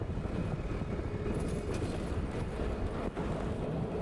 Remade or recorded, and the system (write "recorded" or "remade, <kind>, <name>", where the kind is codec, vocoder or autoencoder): recorded